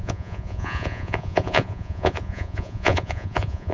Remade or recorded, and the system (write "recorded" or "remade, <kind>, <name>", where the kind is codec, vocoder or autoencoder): remade, vocoder, Vocos